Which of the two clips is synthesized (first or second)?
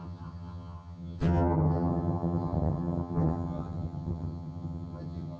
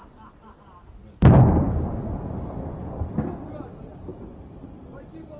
first